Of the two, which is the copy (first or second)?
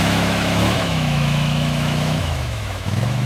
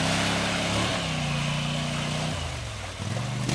first